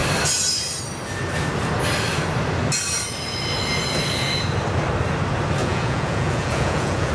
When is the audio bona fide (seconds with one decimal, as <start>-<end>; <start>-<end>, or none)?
0.0-5.6

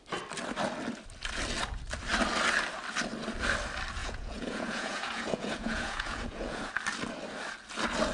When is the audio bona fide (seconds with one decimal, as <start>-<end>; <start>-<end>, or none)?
0.0-4.0; 6.7-8.1

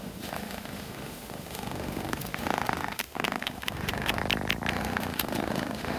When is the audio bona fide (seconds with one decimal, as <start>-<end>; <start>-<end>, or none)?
4.2-4.7

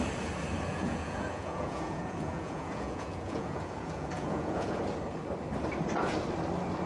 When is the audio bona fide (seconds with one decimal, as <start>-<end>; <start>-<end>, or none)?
0.0-0.7; 4.8-6.9

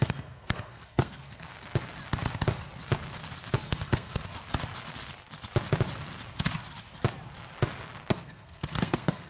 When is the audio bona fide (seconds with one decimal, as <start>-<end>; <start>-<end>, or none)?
1.5-3.6; 4.3-8.1